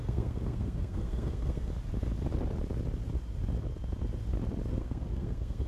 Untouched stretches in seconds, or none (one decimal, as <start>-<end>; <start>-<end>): 1.7-4.7